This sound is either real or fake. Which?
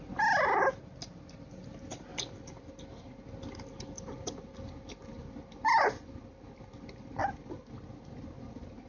real